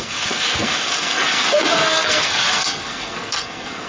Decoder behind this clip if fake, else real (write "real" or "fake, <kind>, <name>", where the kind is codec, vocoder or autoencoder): fake, codec, SNAC